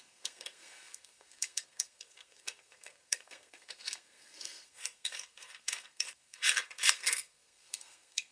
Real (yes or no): no